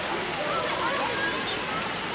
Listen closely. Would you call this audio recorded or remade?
recorded